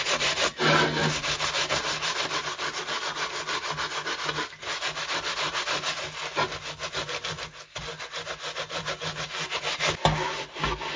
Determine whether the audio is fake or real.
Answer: real